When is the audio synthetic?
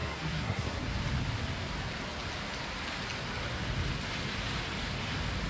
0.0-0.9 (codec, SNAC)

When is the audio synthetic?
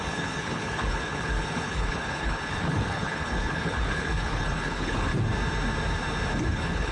0.0-5.1 (codec, HILCodec); 6.5-6.9